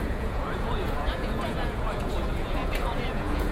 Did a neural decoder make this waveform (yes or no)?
yes